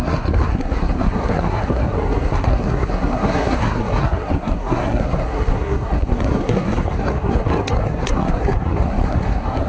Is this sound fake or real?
fake